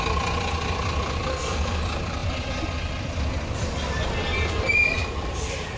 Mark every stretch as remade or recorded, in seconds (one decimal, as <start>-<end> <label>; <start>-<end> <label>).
0.0-1.3 recorded; 1.3-1.8 remade; 1.8-5.8 recorded